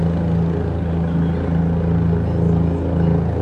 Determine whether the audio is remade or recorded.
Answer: recorded